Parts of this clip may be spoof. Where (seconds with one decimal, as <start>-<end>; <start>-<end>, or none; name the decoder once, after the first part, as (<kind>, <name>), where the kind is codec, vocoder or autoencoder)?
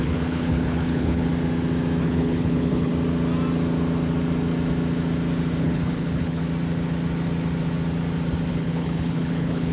0.0-1.3 (codec, HILCodec); 2.0-2.9; 5.6-6.4; 8.5-9.7